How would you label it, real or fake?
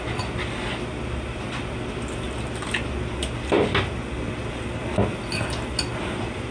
real